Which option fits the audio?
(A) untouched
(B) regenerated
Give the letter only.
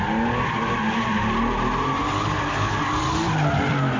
A